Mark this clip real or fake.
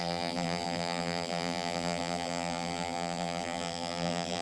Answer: fake